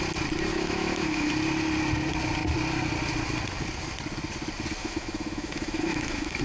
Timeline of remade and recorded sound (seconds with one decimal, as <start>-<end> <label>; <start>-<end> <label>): 0.0-0.5 recorded; 0.5-1.3 remade; 1.3-4.8 recorded; 4.8-6.4 remade